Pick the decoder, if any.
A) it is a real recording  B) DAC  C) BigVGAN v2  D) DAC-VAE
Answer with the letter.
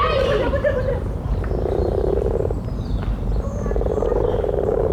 C